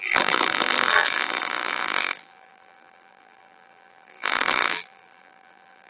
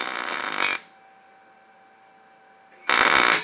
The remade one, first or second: first